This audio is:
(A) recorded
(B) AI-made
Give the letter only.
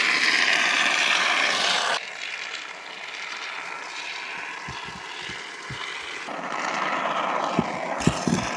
B